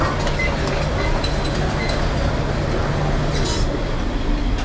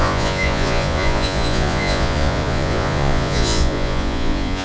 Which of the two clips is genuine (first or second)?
first